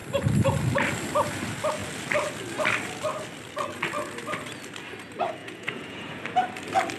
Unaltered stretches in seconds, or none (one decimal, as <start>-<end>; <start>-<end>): 0.0-5.4; 6.2-7.0